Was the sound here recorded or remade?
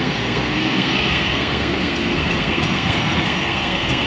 remade